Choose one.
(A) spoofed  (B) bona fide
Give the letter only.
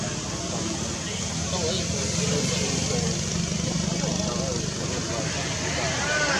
B